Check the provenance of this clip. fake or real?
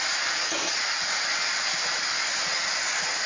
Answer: real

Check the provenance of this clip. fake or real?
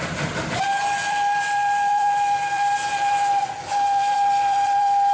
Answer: fake